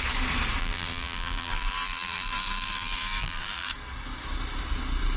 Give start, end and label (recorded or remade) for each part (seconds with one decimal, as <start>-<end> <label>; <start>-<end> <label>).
0.0-0.6 recorded; 0.6-3.7 remade; 3.7-5.2 recorded